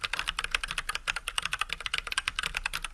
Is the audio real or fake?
real